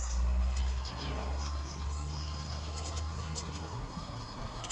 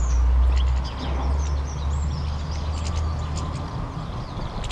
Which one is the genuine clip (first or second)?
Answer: second